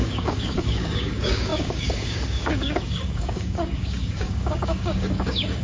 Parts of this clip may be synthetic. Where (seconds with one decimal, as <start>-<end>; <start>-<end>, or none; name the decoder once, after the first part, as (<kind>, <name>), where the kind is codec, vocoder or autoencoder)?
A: 0.0-5.6 (codec, DAC)